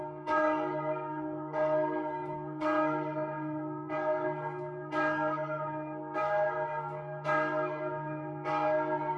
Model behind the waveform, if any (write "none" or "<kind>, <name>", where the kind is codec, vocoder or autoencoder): codec, SNAC